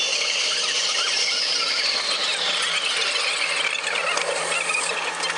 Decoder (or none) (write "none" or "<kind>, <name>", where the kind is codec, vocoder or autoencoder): none